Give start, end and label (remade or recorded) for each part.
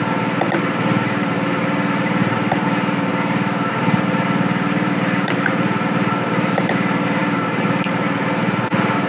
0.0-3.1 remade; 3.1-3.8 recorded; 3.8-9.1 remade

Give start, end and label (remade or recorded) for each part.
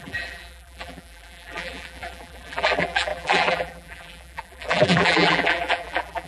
0.0-6.3 remade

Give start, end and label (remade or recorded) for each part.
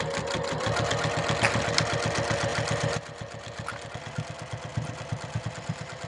0.0-2.5 recorded; 2.5-3.9 remade; 3.9-6.1 recorded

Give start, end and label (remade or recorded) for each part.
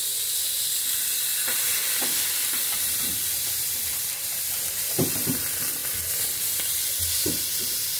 0.0-5.8 remade; 5.8-6.5 recorded; 6.5-8.0 remade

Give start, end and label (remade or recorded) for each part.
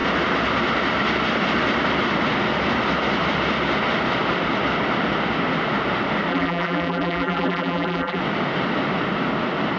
0.0-6.3 recorded; 6.3-8.2 remade; 8.2-9.8 recorded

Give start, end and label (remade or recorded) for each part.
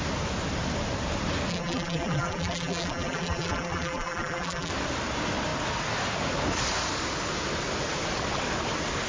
0.0-1.5 recorded; 1.5-4.7 remade; 4.7-9.1 recorded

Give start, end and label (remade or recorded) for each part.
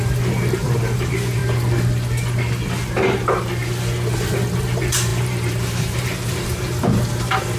0.0-1.4 remade; 1.4-4.6 recorded; 4.6-7.6 remade